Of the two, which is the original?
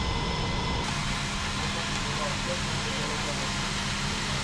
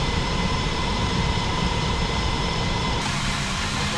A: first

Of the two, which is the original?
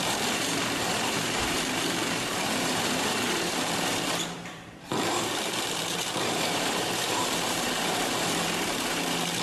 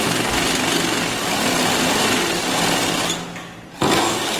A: second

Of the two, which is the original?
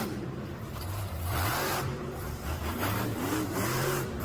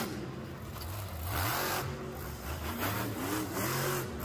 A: second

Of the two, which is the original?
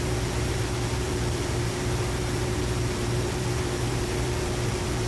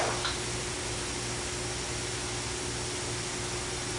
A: second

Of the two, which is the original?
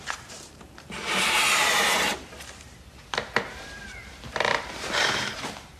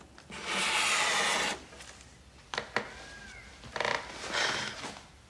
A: second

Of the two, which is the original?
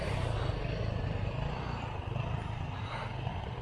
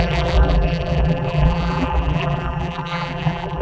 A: first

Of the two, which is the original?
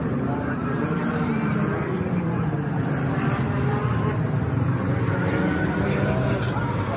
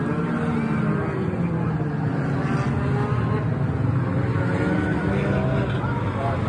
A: second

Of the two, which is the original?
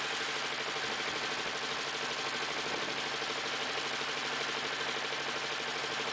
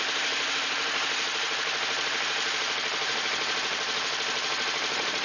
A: first